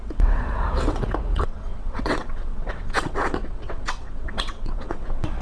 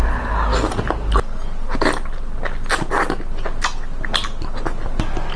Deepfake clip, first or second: first